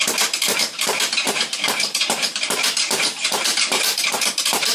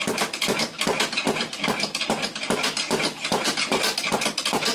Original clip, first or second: second